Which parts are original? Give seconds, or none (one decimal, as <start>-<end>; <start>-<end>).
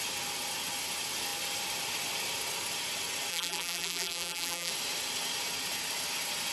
0.0-3.3; 4.7-6.5